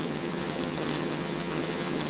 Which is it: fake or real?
fake